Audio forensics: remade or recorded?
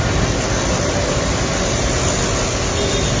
recorded